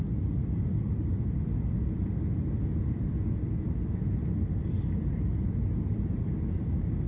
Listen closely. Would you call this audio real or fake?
fake